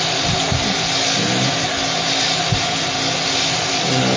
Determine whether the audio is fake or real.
real